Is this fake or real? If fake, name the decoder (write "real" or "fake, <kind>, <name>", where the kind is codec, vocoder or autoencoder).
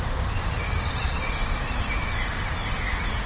real